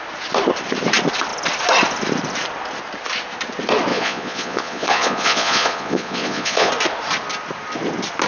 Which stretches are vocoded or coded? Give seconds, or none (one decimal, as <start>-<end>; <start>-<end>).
3.9-6.7